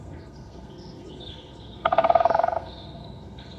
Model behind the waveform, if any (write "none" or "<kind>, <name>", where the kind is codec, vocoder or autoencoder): codec, SNAC